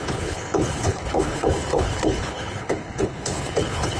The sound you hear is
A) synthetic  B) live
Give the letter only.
A